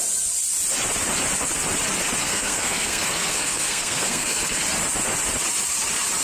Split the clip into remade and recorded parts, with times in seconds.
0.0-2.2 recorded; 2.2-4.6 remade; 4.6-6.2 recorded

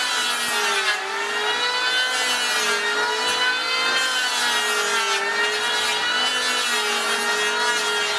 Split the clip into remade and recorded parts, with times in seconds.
0.0-8.2 recorded

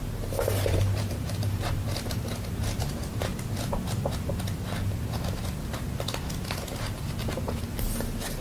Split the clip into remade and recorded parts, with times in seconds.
0.0-3.3 remade; 3.3-8.4 recorded

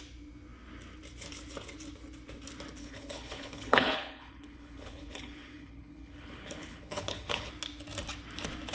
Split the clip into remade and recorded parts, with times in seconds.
0.0-2.8 recorded; 2.8-7.5 remade; 7.5-8.7 recorded

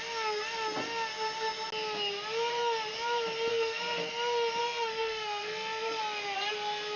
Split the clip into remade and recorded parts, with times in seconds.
0.0-3.5 recorded; 3.5-4.1 remade; 4.1-4.6 recorded; 4.6-6.0 remade; 6.0-7.0 recorded